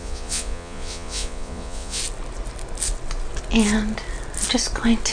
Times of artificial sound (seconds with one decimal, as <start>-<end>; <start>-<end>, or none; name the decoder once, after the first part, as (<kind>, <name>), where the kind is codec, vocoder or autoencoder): 0.0-2.0 (vocoder, Vocos)